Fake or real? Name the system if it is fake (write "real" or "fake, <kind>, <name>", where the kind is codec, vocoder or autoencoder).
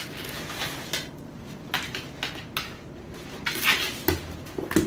real